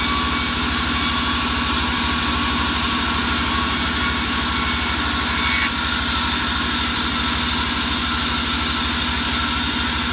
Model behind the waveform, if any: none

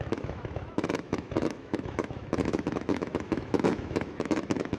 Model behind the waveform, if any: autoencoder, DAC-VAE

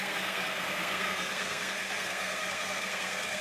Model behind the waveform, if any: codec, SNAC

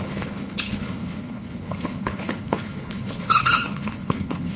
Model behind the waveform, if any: codec, HILCodec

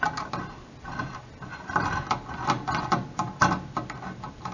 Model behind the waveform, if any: none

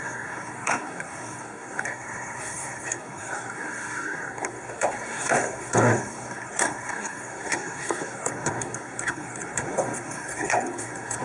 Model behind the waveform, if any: codec, SNAC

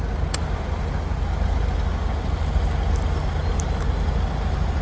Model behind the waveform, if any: none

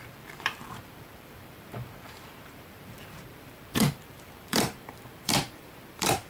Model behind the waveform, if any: vocoder, BigVGAN v2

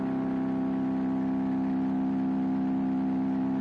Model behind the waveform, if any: none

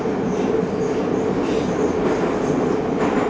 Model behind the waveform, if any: none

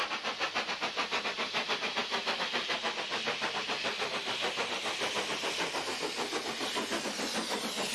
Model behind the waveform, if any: none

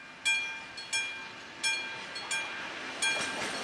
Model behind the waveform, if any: none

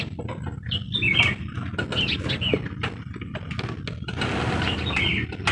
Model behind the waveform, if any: none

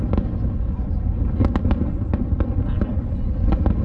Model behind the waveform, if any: none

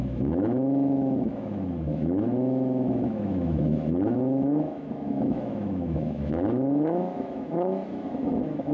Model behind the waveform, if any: autoencoder, DAC-VAE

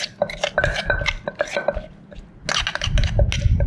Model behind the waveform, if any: none